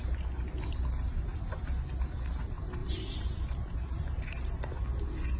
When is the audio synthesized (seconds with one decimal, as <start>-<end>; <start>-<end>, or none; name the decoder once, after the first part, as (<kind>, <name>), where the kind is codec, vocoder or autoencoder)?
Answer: 2.8-4.6 (vocoder, BigVGAN v2)